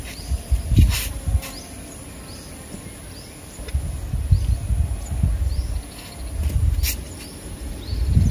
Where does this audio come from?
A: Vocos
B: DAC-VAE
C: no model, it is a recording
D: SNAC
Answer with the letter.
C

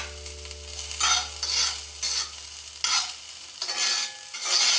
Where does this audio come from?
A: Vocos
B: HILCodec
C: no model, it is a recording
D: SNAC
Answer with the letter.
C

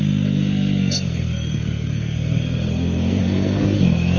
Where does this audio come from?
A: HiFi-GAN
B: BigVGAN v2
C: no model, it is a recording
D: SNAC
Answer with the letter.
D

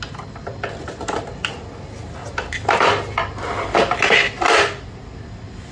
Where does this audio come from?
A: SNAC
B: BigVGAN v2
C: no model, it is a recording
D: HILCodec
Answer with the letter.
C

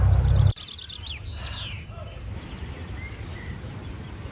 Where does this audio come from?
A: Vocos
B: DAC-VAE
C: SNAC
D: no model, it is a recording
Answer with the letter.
D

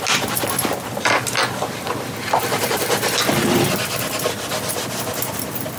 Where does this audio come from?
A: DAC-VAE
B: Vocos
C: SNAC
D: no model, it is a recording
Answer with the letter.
D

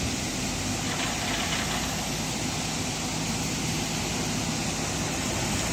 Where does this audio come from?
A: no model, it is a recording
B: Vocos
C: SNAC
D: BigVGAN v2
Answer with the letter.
A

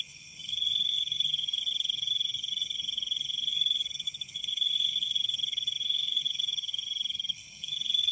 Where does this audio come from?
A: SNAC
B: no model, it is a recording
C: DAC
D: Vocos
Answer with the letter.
A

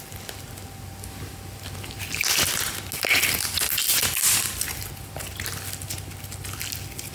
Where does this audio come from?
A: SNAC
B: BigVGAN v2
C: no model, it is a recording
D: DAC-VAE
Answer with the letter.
C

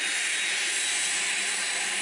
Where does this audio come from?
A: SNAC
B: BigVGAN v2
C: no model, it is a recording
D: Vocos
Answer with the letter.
C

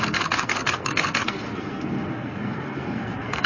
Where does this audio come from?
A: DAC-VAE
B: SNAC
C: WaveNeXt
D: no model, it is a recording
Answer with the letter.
B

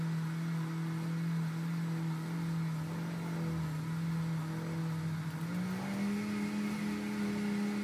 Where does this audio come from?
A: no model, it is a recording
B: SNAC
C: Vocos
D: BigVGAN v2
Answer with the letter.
A